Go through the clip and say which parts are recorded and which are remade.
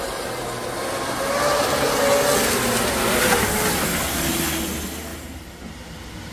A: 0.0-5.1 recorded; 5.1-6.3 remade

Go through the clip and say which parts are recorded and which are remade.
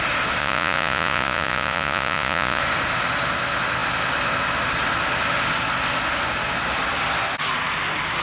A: 0.0-0.4 recorded; 0.4-2.6 remade; 2.6-8.2 recorded